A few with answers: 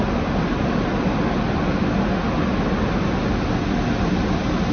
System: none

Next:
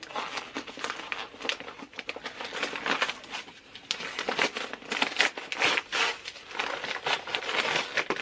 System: none